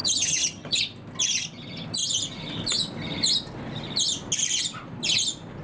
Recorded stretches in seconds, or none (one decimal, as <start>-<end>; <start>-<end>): 0.8-5.6